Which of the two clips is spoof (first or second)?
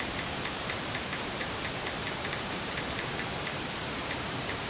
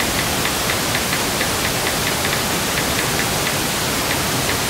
first